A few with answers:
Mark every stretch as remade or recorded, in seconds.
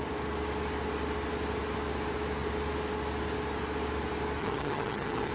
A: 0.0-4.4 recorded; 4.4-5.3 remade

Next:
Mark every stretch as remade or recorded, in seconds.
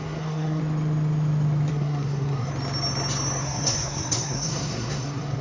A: 0.0-0.6 remade; 0.6-1.7 recorded; 1.7-2.5 remade; 2.5-3.4 recorded; 3.4-5.4 remade